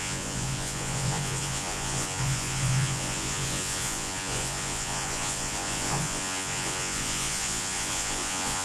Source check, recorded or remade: remade